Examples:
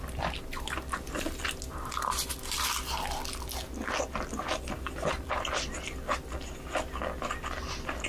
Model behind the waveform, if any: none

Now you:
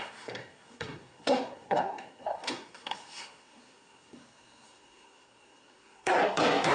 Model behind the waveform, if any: codec, SNAC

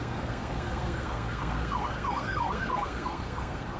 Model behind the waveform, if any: codec, SNAC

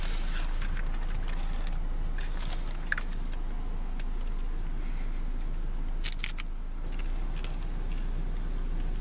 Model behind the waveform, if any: none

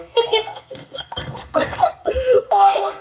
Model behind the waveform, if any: codec, SNAC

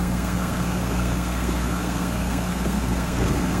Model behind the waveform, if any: codec, SNAC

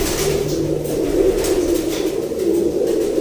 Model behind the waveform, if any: none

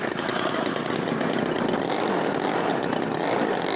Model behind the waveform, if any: none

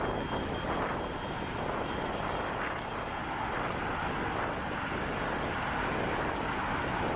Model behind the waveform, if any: none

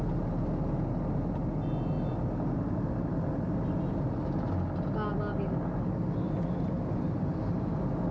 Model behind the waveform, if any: none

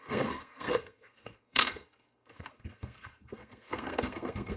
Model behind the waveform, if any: codec, SNAC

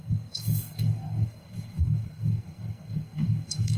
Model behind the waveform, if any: codec, SNAC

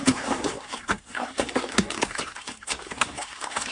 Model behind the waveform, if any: codec, SNAC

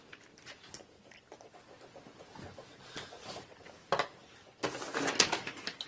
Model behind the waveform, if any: none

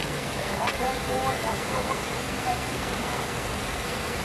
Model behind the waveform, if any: codec, SNAC